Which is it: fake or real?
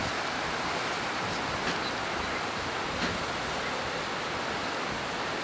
real